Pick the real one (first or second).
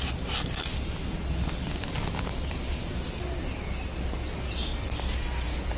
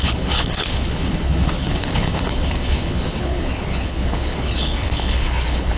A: first